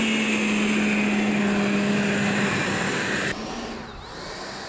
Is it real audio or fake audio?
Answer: real